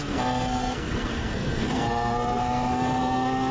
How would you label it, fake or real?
fake